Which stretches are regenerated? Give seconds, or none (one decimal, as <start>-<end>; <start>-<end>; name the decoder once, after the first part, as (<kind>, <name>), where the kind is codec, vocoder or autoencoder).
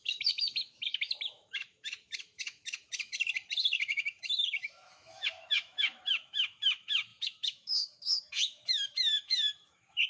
0.0-10.1 (autoencoder, DAC-VAE)